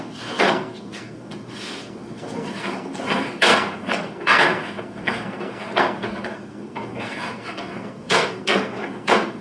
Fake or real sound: fake